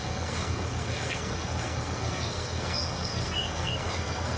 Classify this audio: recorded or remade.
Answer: remade